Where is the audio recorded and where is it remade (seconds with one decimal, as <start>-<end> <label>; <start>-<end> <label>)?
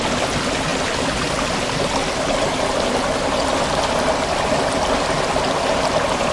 0.0-6.3 recorded